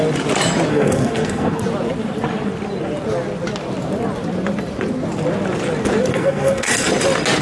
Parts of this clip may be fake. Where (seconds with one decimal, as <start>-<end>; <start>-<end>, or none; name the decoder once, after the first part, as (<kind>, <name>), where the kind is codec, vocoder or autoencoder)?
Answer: 0.7-1.6 (codec, SNAC); 6.1-6.9